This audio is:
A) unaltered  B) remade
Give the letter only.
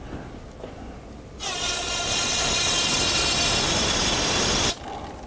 A